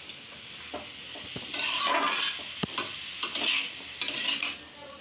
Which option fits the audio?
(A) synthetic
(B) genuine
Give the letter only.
B